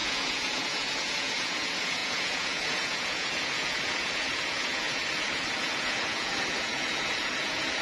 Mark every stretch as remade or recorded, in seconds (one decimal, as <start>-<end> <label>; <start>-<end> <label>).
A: 0.0-7.8 remade